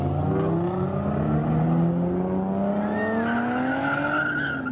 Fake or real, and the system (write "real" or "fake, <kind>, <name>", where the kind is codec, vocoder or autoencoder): real